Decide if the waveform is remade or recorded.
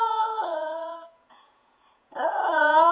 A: remade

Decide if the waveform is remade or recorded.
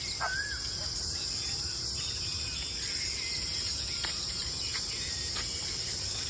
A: recorded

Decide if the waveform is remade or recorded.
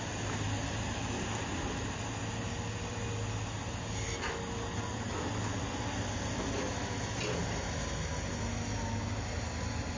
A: recorded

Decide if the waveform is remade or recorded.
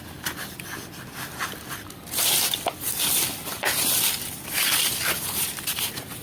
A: remade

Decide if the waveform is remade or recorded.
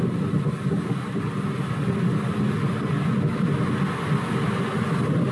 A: recorded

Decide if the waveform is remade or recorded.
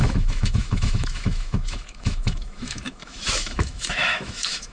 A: remade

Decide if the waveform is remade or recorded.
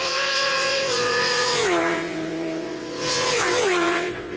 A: remade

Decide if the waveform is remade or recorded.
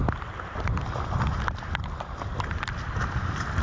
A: recorded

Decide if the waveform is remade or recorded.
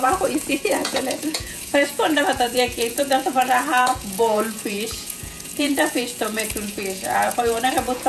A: remade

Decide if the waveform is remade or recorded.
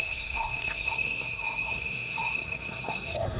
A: remade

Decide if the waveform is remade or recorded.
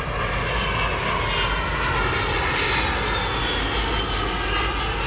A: recorded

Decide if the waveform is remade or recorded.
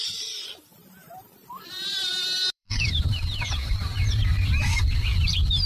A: remade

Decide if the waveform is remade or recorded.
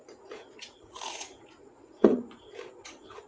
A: remade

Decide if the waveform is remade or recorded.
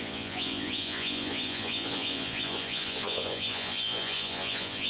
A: remade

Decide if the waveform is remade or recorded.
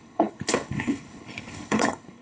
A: remade